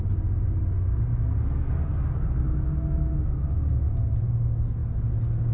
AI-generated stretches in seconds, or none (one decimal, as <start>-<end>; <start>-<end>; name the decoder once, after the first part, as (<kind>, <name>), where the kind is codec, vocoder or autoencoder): none